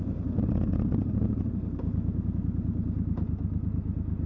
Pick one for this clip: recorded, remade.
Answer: recorded